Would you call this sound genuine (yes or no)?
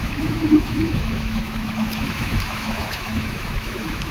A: no